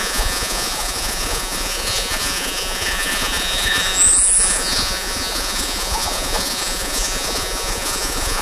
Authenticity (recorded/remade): remade